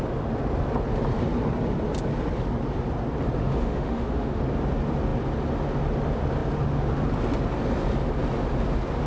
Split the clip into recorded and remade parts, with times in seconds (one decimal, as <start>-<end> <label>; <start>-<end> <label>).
0.0-3.4 recorded; 3.4-4.4 remade; 4.4-9.1 recorded